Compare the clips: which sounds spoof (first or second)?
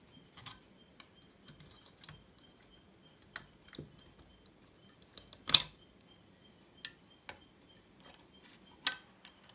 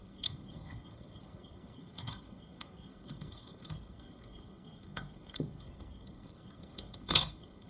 second